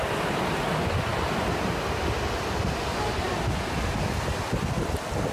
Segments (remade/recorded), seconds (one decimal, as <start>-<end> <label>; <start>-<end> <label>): 0.0-5.3 recorded